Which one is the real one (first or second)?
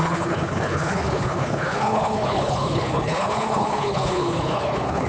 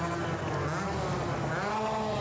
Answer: second